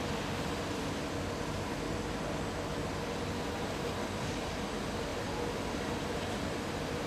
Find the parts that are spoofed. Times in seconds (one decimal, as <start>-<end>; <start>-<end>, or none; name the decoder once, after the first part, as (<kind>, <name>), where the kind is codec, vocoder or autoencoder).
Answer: 4.3-7.1 (vocoder, BigVGAN v2)